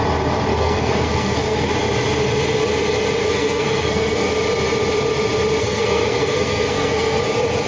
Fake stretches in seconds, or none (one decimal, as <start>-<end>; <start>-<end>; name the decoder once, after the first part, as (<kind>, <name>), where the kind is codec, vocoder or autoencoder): 0.5-1.7 (codec, SNAC); 3.2-4.3; 5.6-7.2